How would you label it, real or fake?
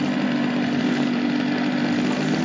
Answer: real